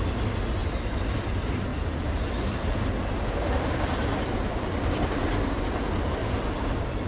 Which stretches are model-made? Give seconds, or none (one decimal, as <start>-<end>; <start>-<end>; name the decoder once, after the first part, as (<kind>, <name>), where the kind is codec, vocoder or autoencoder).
0.6-1.1 (vocoder, BigVGAN v2); 1.7-5.6; 6.2-7.1